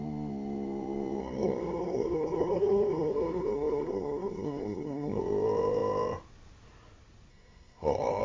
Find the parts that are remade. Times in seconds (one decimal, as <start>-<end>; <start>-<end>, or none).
1.2-5.2; 7.3-8.2